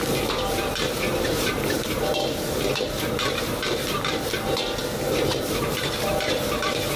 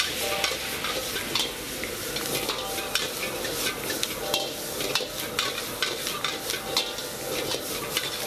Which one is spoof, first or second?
first